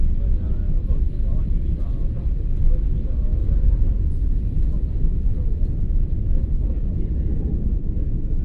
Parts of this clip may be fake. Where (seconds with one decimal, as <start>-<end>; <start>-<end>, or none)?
0.0-0.6